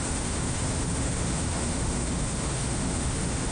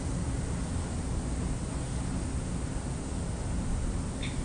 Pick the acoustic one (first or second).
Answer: second